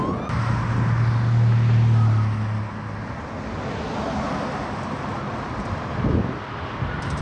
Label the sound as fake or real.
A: real